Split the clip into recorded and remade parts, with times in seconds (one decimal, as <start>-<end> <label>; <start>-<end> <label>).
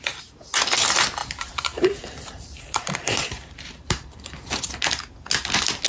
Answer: 0.0-1.2 recorded; 1.2-4.7 remade; 4.7-5.9 recorded